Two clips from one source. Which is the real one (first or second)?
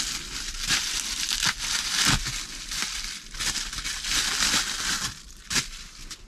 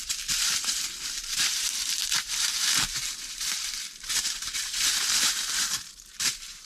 first